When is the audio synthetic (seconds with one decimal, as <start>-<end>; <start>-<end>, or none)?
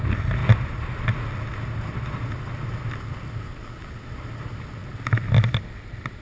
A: none